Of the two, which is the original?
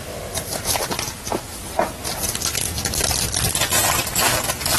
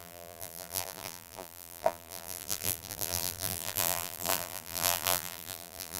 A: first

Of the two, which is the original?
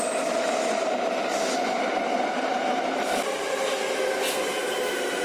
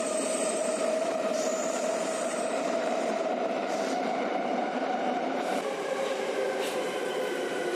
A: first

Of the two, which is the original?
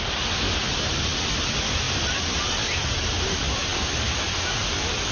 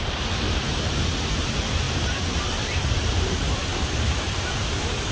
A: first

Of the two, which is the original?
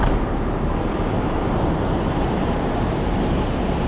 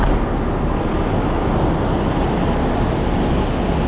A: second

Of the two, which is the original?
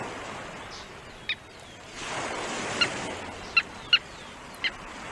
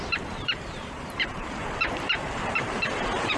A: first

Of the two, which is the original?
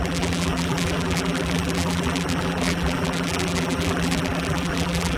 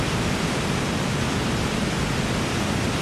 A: second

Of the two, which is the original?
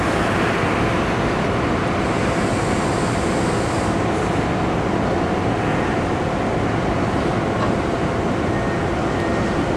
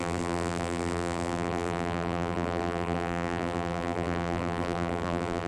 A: first